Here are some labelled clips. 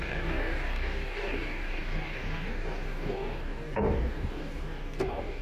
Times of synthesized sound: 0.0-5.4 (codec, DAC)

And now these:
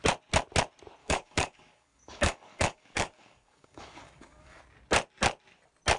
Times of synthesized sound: 1.0-4.6 (codec, DAC)

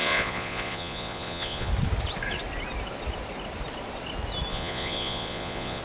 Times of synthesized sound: 0.0-1.7 (vocoder, Vocos); 4.5-5.8

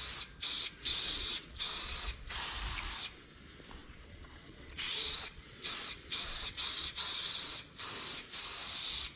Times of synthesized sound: 0.9-2.0 (vocoder, Vocos); 3.8-7.5

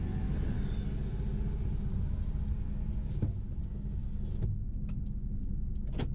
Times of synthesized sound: none

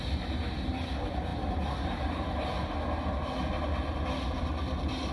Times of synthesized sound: none

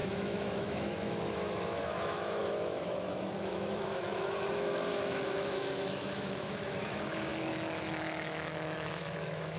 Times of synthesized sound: 0.0-9.6 (autoencoder, DAC-VAE)

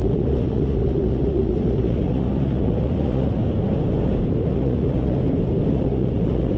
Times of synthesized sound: 0.0-3.4 (vocoder, Vocos); 4.4-5.2; 5.7-6.6